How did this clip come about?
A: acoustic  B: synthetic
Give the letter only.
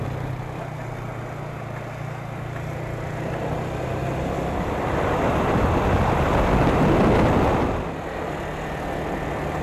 A